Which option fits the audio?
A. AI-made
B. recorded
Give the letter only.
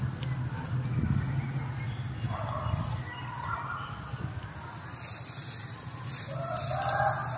B